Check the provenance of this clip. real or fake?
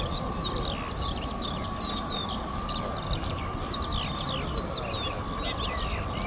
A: real